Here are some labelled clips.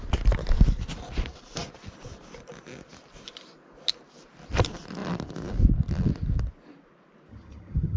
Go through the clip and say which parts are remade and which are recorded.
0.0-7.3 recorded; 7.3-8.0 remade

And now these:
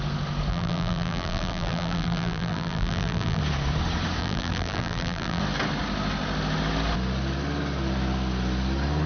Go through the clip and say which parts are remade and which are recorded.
0.0-0.5 recorded; 0.5-3.4 remade; 3.4-4.2 recorded; 4.2-5.4 remade; 5.4-9.1 recorded